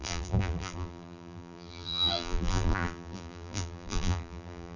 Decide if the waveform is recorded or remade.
remade